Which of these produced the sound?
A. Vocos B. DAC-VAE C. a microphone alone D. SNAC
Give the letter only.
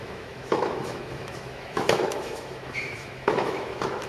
B